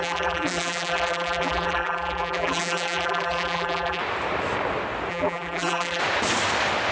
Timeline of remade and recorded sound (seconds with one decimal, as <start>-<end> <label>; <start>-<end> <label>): 0.0-4.0 remade; 4.0-5.1 recorded; 5.1-6.0 remade; 6.0-6.9 recorded